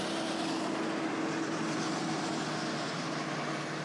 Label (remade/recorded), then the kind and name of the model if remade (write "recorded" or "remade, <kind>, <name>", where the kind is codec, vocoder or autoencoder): recorded